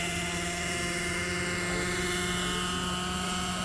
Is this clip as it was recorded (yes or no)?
yes